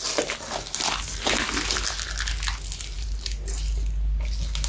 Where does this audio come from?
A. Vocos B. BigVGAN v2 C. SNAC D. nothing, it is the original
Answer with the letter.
D